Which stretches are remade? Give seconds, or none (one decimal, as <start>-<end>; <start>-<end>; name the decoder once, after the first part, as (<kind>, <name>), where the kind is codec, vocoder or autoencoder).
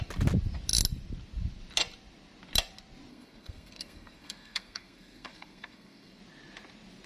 3.1-6.2 (codec, SNAC)